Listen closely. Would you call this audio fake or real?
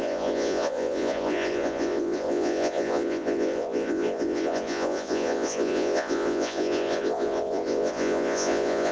fake